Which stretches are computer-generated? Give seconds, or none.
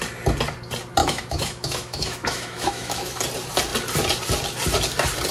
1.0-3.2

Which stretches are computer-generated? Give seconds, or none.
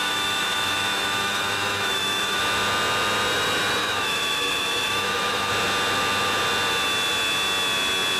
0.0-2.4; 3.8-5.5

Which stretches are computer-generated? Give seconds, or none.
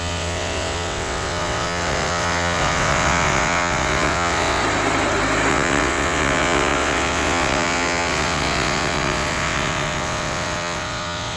0.0-4.6; 5.5-11.4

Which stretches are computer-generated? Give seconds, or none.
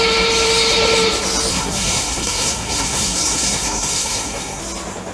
1.5-4.6